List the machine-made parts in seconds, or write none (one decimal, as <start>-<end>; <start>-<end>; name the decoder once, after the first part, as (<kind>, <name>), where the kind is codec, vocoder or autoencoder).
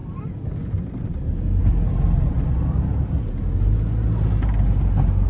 none